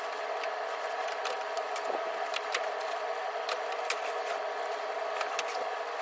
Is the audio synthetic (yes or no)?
no